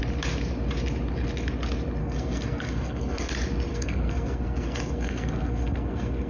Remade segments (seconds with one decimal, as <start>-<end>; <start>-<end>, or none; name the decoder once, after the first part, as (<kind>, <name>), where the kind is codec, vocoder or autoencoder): 2.0-3.3 (codec, SNAC); 3.7-6.3